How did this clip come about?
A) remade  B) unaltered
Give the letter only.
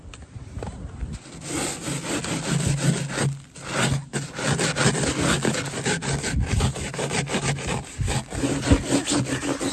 B